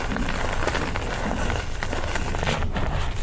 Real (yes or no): yes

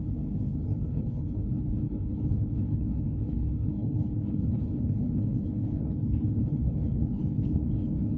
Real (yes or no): no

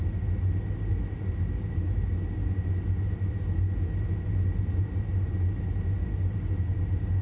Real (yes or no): yes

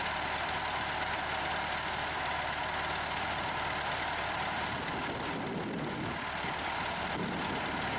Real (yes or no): no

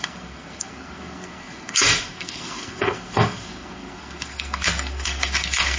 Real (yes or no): no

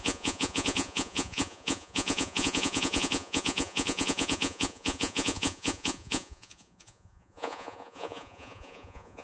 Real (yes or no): no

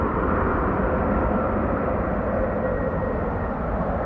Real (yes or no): yes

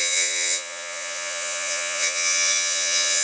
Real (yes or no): no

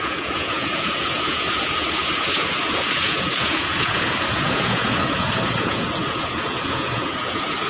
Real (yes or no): no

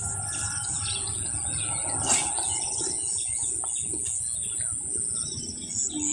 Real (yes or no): yes